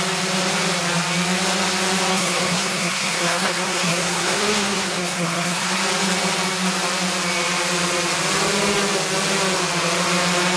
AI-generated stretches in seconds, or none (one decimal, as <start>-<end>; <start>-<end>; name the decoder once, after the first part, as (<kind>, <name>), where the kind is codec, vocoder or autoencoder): 2.1-5.8 (codec, SNAC)